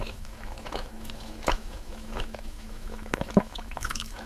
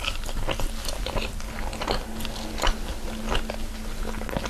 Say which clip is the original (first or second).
second